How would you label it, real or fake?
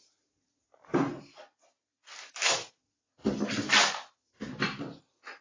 real